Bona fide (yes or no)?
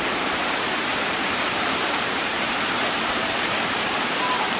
no